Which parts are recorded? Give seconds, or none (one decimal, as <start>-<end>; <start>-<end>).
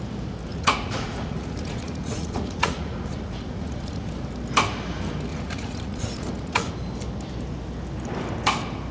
0.0-0.5; 4.1-5.3; 6.7-8.9